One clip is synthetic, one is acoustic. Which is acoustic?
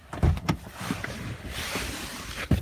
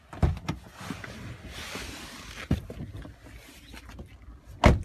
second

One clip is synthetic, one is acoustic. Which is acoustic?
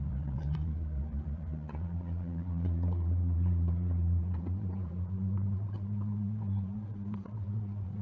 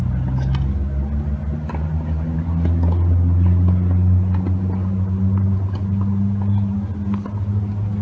second